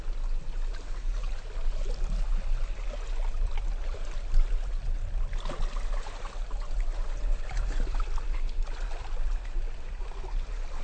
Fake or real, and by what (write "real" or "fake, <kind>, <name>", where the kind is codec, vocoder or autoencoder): real